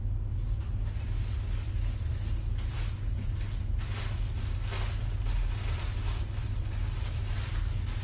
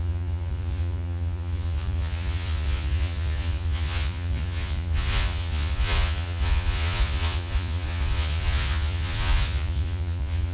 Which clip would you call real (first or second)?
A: first